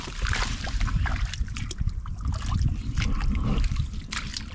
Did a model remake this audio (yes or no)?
no